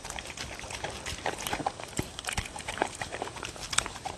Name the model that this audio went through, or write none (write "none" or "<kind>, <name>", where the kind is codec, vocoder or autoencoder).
vocoder, BigVGAN v2